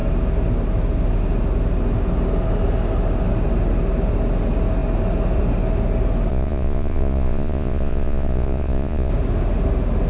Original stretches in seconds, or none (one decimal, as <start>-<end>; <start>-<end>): 0.0-6.3; 9.1-10.1